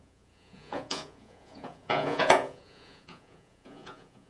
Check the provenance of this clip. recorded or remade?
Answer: remade